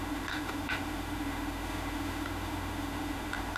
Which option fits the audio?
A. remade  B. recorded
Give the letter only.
A